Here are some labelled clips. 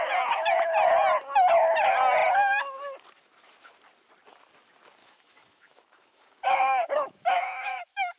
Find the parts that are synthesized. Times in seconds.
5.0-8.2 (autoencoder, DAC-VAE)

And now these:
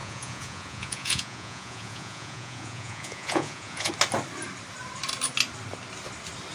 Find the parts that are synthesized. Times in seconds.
0.0-3.9 (vocoder, Vocos)

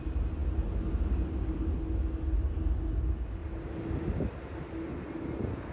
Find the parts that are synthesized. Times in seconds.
none

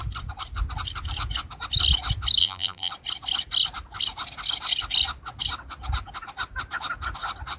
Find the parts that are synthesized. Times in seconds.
2.4-2.9 (vocoder, BigVGAN v2)

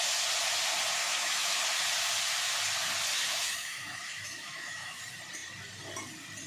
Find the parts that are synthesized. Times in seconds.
1.0-1.8 (autoencoder, DAC-VAE); 3.1-5.0